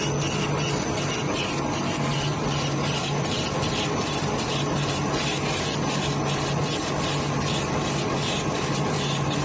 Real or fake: real